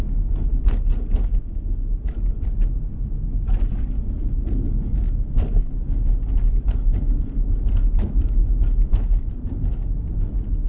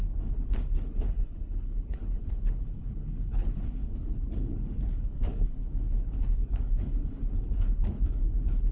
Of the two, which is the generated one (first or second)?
second